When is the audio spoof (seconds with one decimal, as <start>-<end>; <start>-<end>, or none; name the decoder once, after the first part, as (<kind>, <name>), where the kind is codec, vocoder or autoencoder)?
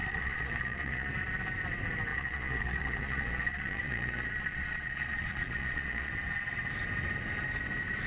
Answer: 0.0-1.1 (vocoder, Vocos); 2.1-6.1